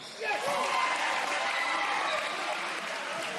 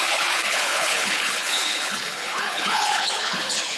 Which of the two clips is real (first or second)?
first